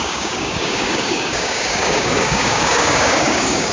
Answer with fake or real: fake